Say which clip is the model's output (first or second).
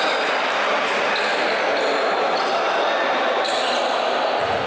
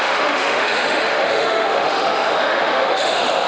second